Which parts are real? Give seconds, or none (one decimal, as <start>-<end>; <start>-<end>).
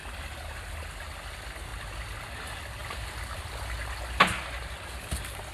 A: 0.0-5.5